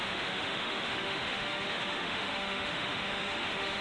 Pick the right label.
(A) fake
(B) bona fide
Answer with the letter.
A